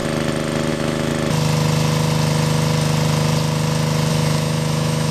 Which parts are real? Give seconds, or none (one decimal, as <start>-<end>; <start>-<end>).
0.0-0.7; 1.1-4.1